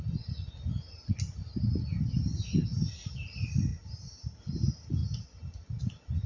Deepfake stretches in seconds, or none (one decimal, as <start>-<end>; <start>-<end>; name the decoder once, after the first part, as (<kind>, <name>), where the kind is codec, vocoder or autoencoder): none